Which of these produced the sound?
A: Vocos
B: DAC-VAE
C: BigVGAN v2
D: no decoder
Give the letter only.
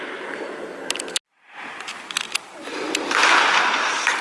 D